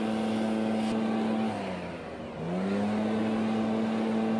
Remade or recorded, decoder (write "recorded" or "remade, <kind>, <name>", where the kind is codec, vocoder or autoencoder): recorded